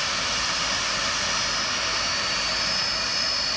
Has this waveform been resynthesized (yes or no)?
no